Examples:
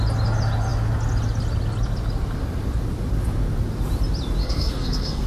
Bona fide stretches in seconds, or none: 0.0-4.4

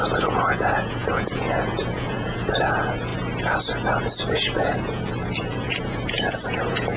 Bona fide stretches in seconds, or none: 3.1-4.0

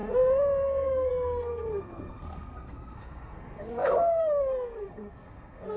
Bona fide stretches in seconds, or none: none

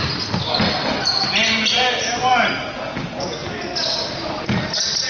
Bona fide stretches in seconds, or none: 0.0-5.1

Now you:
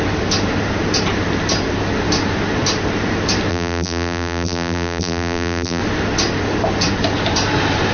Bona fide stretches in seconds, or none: 0.0-3.5; 5.8-7.9